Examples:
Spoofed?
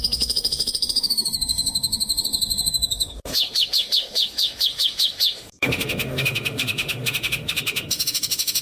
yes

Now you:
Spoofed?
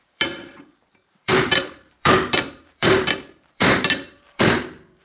yes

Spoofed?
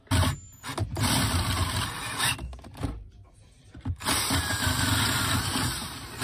no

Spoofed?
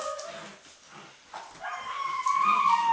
no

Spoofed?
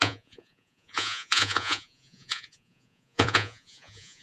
yes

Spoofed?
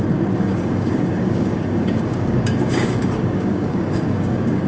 yes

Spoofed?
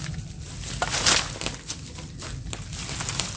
no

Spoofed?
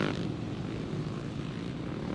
no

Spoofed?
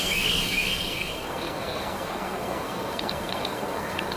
yes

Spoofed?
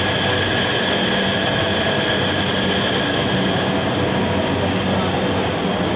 no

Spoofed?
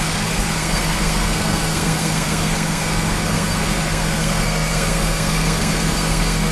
yes